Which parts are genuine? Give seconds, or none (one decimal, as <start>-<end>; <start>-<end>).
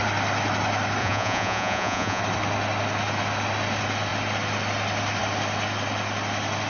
0.0-1.0; 2.2-6.7